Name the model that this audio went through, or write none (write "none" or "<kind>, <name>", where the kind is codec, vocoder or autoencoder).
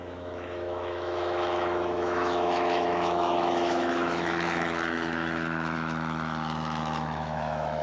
autoencoder, DAC-VAE